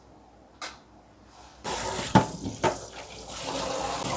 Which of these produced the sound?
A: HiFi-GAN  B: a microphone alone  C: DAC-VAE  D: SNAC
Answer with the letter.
B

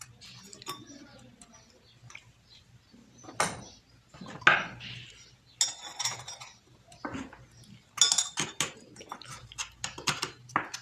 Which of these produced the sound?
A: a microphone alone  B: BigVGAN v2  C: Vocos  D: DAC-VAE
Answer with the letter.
A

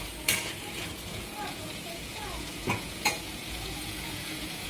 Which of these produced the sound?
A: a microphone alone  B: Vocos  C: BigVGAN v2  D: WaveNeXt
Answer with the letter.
B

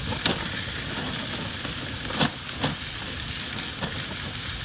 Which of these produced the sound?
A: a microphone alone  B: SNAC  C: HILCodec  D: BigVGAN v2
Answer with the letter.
D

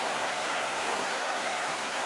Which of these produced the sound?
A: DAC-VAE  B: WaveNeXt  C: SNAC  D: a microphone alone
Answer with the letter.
C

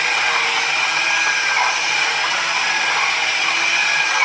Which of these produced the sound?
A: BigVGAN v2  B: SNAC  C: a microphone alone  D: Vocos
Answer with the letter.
C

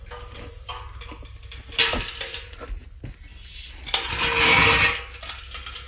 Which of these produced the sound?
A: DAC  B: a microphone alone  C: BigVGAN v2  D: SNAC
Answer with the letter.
B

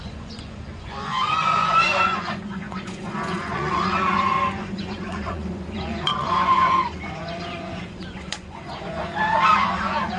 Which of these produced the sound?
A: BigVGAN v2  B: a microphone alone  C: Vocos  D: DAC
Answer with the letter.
C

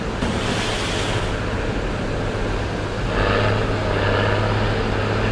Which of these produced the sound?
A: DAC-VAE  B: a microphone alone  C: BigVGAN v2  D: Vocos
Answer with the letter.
B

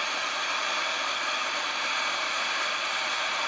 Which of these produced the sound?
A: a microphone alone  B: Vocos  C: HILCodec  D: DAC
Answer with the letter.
A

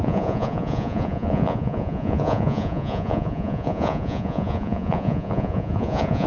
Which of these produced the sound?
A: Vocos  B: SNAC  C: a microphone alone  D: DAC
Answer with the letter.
A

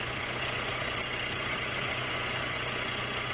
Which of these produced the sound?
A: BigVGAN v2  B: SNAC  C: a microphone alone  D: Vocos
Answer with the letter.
D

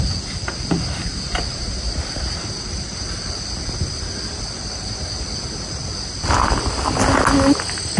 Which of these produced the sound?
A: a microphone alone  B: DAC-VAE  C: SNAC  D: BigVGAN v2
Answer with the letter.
A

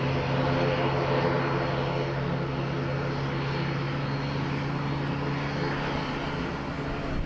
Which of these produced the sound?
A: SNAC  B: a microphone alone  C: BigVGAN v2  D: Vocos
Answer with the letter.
B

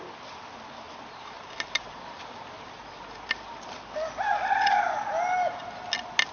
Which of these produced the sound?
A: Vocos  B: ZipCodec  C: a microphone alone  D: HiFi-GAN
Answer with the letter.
C